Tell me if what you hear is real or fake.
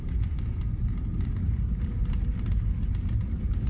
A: real